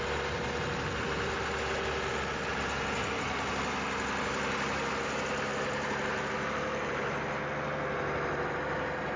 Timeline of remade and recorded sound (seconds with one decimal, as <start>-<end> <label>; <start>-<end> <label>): 0.0-9.2 recorded